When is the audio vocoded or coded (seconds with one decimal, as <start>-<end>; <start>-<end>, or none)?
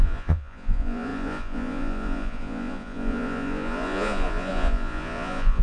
0.0-5.6